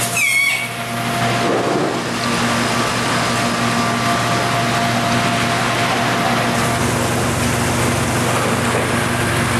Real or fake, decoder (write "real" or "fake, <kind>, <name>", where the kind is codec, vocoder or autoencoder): real